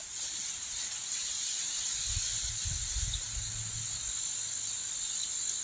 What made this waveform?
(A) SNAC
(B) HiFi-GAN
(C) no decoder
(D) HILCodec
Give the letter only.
C